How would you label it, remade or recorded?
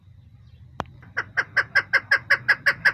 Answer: recorded